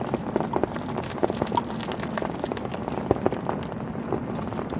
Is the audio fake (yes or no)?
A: no